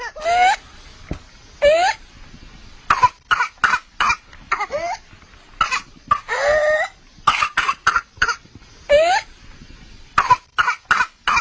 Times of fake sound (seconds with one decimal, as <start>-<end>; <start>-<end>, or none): none